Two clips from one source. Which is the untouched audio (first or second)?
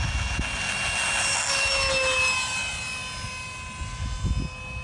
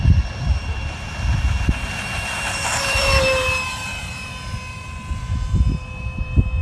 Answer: first